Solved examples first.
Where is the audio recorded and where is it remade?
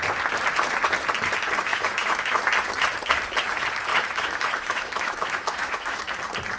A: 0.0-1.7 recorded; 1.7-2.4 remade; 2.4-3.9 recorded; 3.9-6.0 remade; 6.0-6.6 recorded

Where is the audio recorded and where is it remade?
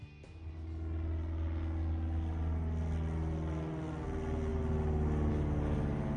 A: 0.0-6.2 recorded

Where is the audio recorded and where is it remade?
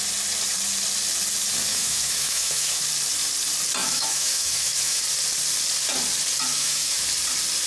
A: 0.0-1.7 recorded; 1.7-2.8 remade; 2.8-3.8 recorded; 3.8-5.0 remade; 5.0-6.5 recorded; 6.5-7.0 remade; 7.0-7.7 recorded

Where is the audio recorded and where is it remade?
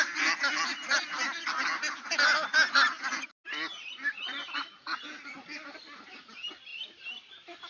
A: 0.0-7.7 recorded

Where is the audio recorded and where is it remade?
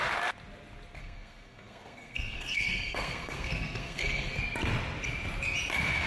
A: 0.0-1.0 recorded; 1.0-4.4 remade; 4.4-6.1 recorded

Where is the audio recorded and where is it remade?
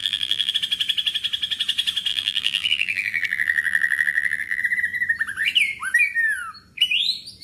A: 0.0-0.5 remade; 0.5-2.1 recorded; 2.1-4.6 remade; 4.6-7.4 recorded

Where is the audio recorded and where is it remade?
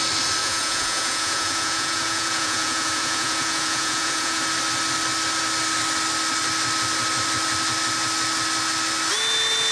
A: 0.0-0.4 recorded; 0.4-4.4 remade; 4.4-9.7 recorded